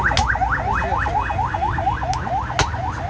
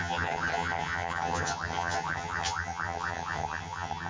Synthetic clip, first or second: second